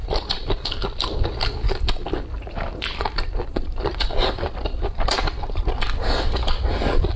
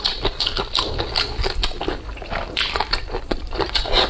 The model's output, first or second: first